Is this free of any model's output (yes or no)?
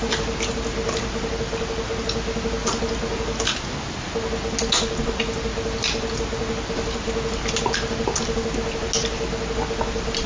yes